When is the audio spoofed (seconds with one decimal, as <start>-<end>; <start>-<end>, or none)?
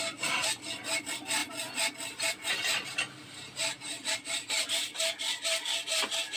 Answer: 0.0-1.4; 4.1-6.4